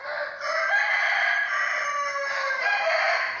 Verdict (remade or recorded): recorded